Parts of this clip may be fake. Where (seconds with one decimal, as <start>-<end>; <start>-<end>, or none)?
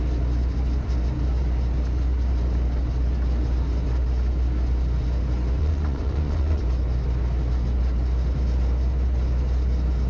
5.6-6.6